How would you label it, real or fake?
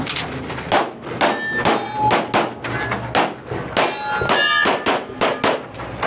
real